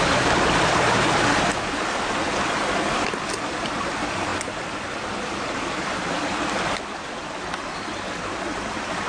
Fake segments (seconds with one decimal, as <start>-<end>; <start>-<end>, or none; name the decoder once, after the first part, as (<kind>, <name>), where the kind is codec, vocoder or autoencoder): none